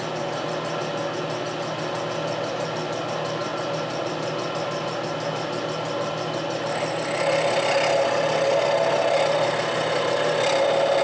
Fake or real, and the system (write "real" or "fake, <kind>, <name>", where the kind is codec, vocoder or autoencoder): real